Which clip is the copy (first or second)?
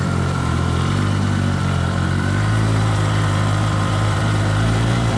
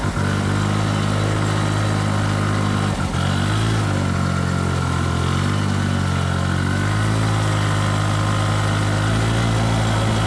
first